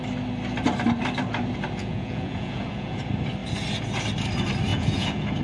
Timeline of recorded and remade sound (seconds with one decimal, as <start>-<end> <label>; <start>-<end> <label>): 0.0-1.8 recorded; 1.8-3.0 remade; 3.0-4.7 recorded; 4.7-5.4 remade